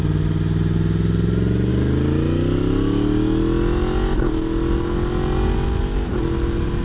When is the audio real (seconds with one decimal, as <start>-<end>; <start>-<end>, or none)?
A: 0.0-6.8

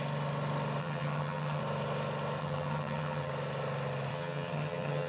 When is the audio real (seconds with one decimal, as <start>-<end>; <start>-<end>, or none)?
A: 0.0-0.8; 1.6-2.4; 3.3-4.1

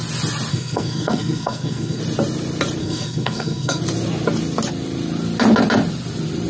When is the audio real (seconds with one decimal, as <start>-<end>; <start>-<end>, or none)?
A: 0.0-0.5; 2.0-2.8; 3.8-6.5

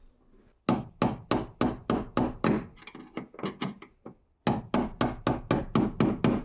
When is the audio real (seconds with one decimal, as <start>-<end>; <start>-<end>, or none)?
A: 0.0-6.4